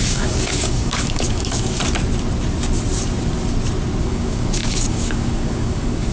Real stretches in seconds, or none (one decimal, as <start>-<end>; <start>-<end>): 1.8-4.0